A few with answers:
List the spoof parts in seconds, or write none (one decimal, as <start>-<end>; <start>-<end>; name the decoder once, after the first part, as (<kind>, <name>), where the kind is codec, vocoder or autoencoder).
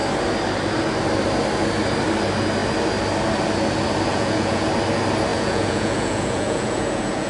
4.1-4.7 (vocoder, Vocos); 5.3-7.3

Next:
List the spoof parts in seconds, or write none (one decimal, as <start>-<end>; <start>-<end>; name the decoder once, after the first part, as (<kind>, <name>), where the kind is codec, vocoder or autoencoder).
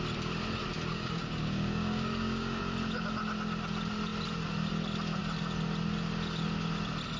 0.9-2.6 (codec, DAC)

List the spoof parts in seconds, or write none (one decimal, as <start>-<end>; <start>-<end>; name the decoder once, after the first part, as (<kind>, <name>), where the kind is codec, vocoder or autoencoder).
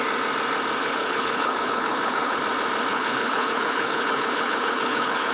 0.8-2.4 (codec, HILCodec); 2.9-5.3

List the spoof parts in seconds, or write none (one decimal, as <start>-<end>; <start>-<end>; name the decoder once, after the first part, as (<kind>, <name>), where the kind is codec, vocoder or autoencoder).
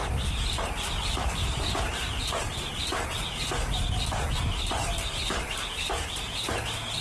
0.0-2.0 (vocoder, BigVGAN v2); 4.9-6.5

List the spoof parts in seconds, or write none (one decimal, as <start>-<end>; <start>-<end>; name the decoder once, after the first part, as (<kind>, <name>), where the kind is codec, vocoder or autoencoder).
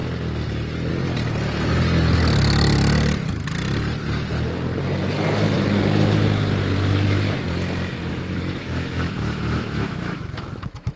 8.1-11.0 (autoencoder, DAC-VAE)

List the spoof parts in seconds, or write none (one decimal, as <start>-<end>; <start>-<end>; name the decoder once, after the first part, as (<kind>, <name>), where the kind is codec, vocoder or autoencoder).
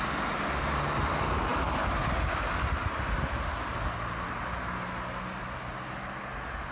none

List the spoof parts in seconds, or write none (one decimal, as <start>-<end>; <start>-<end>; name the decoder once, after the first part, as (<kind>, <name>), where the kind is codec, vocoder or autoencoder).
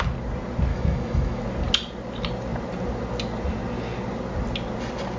0.7-1.4 (autoencoder, DAC-VAE)